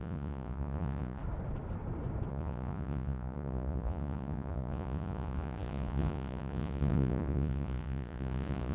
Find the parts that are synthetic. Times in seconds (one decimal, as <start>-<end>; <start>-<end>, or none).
0.0-1.2; 2.3-8.7